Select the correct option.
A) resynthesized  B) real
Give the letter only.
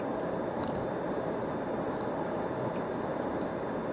B